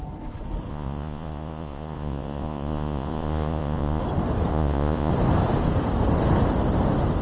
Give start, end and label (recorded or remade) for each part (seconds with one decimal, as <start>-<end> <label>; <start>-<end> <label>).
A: 0.0-0.7 recorded; 0.7-4.0 remade; 4.0-4.5 recorded; 4.5-5.1 remade; 5.1-7.2 recorded